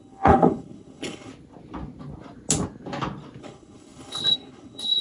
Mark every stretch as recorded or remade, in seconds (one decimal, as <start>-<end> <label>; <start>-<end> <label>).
0.0-1.3 remade; 1.3-3.4 recorded; 3.4-5.0 remade